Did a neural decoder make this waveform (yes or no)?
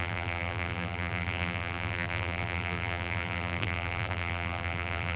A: yes